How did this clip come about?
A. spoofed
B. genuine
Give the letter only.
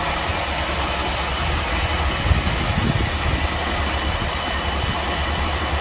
B